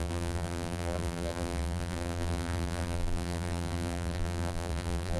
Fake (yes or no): yes